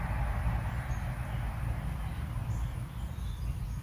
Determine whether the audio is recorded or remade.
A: recorded